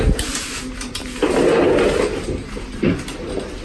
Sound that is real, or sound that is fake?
real